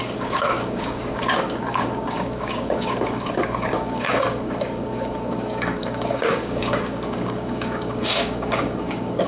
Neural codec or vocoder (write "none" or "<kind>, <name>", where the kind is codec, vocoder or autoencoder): codec, DAC